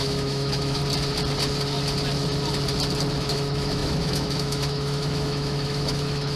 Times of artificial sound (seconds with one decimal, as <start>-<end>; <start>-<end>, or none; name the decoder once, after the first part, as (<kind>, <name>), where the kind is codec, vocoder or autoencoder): 0.0-0.8 (autoencoder, DAC-VAE); 3.2-6.4